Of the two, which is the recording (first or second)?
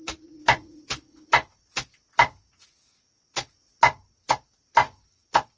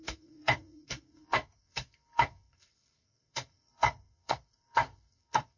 first